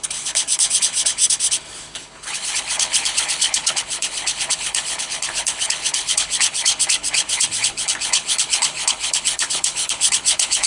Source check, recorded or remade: remade